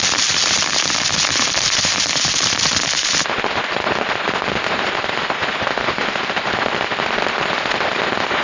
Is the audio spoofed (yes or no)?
yes